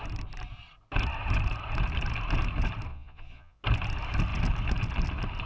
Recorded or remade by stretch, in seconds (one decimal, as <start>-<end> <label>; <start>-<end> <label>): 0.0-2.9 recorded; 2.9-3.6 remade; 3.6-5.5 recorded